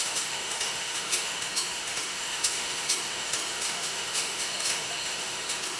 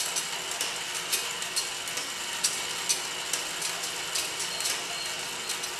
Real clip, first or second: second